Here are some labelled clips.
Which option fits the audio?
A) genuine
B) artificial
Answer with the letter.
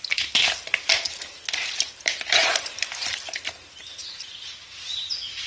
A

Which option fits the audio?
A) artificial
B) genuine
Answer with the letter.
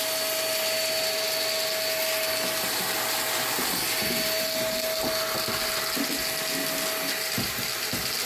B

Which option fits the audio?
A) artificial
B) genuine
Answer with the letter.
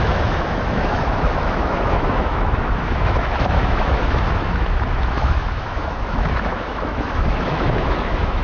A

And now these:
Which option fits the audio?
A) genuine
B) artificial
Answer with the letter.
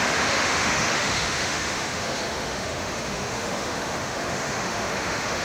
B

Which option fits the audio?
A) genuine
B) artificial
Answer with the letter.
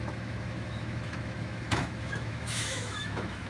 B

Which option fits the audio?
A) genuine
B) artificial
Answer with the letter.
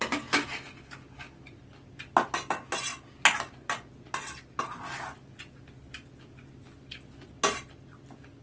A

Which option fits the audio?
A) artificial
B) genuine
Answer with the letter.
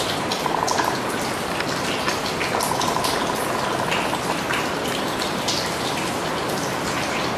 B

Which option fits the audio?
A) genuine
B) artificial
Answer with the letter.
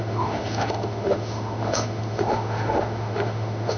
B